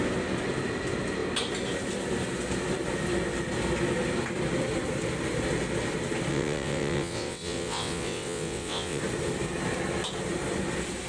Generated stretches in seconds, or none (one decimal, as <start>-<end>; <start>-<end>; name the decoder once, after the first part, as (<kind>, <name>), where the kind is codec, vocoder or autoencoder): 6.3-9.0 (vocoder, WaveNeXt)